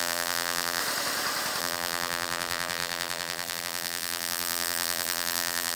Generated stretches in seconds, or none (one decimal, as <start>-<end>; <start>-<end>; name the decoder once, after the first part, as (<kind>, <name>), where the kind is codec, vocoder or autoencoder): 0.0-0.8 (vocoder, BigVGAN v2); 1.6-5.8